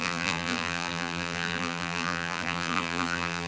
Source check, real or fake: fake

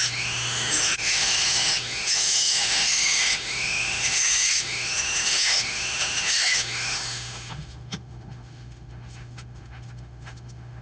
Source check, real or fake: fake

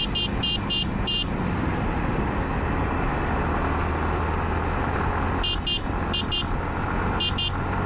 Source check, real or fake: real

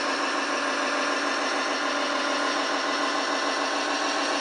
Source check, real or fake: real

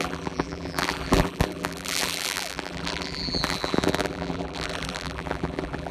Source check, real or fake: fake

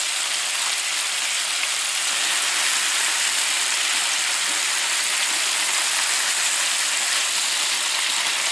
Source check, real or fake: real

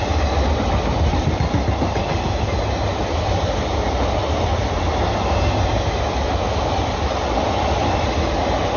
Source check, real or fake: real